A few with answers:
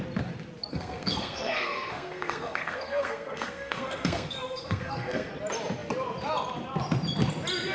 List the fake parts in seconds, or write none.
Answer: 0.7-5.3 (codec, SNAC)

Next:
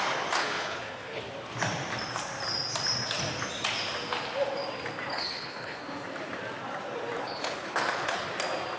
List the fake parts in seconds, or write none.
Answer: 0.4-1.2 (codec, HILCodec); 5.1-5.8; 7.2-8.3

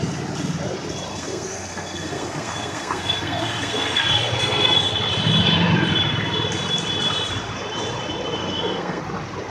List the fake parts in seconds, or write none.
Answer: 1.1-4.9 (codec, SNAC); 8.4-9.0

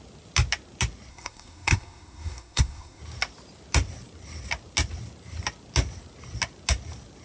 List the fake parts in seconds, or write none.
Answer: 1.1-3.0 (codec, SNAC)

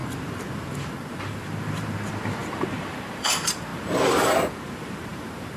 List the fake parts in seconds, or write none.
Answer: 0.0-5.6 (vocoder, BigVGAN v2)

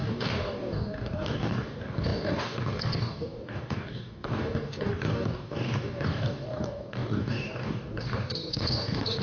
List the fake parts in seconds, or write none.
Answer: 0.0-9.2 (codec, DAC)

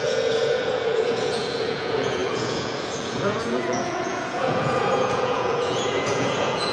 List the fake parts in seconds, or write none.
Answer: 0.0-6.7 (vocoder, Vocos)